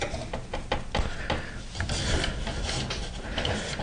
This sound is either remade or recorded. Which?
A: recorded